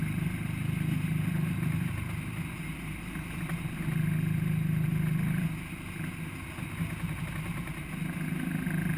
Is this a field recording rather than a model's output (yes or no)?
yes